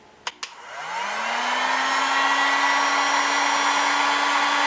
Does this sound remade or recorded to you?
recorded